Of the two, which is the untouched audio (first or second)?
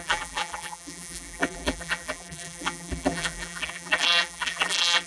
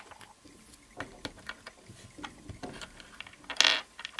second